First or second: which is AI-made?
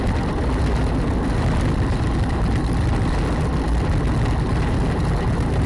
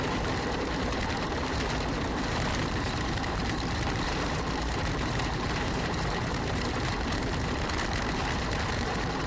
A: second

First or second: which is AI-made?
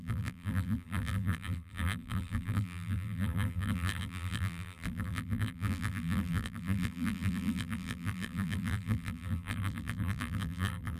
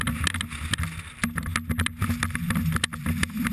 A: first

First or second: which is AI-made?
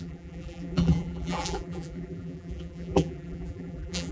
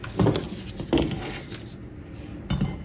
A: first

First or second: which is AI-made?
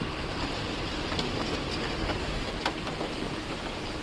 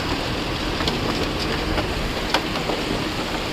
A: first